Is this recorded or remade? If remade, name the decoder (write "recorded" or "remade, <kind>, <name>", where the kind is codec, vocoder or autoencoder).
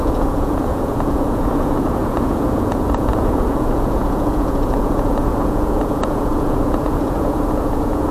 remade, vocoder, Vocos